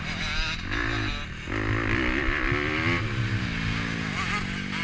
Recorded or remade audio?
recorded